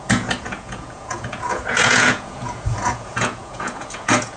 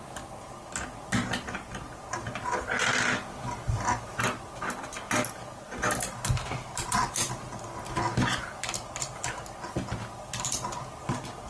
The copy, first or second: first